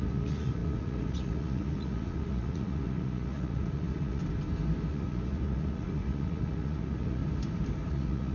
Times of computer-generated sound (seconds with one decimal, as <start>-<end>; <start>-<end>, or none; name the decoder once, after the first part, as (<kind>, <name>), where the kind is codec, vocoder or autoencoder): 0.0-4.2 (vocoder, Vocos); 4.9-7.2; 7.9-8.3

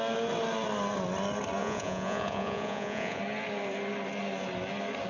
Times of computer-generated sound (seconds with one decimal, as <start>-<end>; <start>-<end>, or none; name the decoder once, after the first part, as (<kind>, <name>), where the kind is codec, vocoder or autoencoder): 1.6-3.2 (vocoder, Vocos)

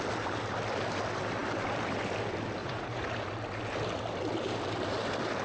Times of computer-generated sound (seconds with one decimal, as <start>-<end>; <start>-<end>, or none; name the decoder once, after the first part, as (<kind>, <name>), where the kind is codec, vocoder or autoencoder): 2.6-3.1 (vocoder, Vocos)

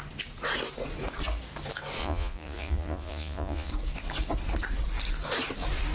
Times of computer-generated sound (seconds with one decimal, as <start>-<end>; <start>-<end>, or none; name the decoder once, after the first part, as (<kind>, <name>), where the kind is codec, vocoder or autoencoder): 2.0-3.7 (vocoder, Vocos)

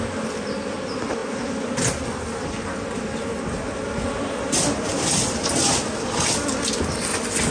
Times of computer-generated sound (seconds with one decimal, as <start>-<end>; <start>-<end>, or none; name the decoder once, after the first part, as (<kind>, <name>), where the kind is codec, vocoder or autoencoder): none

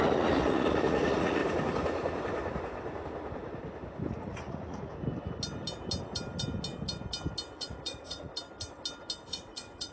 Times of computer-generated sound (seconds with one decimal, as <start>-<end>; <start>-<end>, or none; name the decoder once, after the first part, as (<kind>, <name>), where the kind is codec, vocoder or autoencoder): 0.0-1.4 (vocoder, Vocos); 4.1-4.9; 7.6-8.3; 9.3-9.9

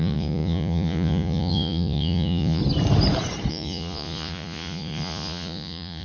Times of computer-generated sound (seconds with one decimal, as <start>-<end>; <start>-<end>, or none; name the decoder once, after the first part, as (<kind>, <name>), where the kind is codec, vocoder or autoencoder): 0.0-2.6 (vocoder, Vocos); 3.5-6.0

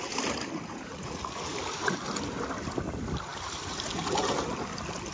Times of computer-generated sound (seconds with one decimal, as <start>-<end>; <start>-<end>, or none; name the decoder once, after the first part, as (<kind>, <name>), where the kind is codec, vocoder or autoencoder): 0.9-1.4 (vocoder, Vocos)